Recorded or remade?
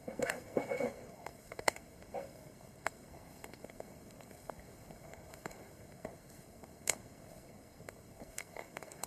remade